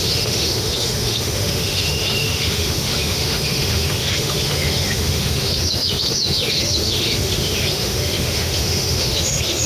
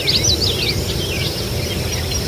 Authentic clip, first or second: second